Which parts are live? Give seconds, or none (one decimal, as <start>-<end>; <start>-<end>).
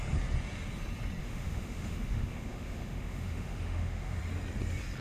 0.0-1.2; 4.2-5.0